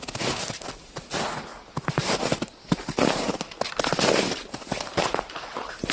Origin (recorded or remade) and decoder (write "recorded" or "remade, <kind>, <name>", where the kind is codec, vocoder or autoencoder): recorded